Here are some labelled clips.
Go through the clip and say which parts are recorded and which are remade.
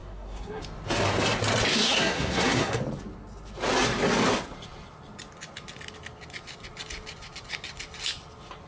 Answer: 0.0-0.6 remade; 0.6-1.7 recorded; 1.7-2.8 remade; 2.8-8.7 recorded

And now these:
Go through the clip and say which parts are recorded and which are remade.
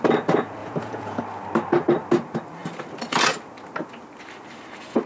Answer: 0.0-0.6 recorded; 0.6-1.2 remade; 1.2-5.1 recorded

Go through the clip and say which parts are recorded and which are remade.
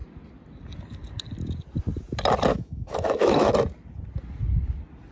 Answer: 0.0-2.5 recorded; 2.5-3.5 remade; 3.5-5.1 recorded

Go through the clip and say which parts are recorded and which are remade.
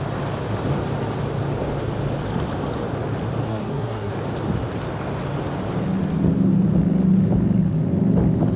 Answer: 0.0-3.5 recorded; 3.5-4.1 remade; 4.1-8.6 recorded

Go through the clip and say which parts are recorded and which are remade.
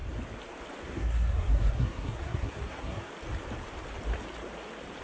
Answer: 0.0-0.8 recorded; 0.8-3.1 remade; 3.1-5.0 recorded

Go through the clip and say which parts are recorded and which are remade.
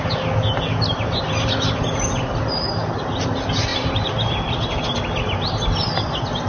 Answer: 0.0-3.7 recorded; 3.7-4.4 remade; 4.4-6.5 recorded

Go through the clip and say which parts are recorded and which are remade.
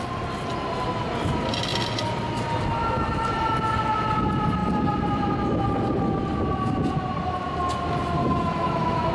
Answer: 0.0-8.2 recorded; 8.2-9.1 remade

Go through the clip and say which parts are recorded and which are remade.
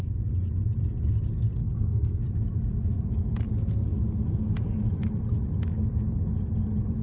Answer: 0.0-1.6 recorded; 1.6-2.2 remade; 2.2-7.0 recorded